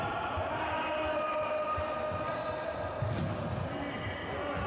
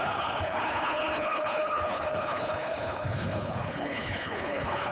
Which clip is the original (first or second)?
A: first